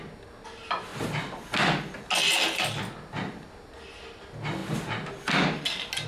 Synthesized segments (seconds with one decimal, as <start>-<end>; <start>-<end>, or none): none